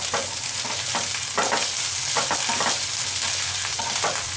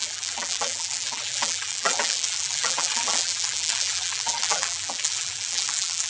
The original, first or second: first